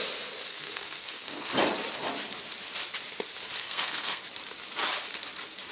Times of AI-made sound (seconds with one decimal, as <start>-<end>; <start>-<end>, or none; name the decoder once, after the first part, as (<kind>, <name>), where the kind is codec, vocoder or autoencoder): 0.5-1.5 (codec, SNAC); 3.6-4.2